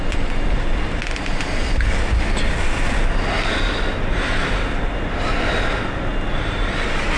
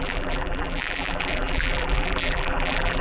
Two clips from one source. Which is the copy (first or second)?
second